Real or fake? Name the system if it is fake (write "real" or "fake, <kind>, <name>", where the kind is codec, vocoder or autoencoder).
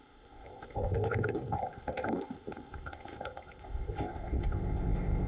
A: fake, codec, ZipCodec